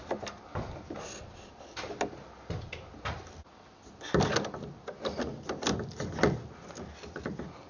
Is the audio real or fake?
real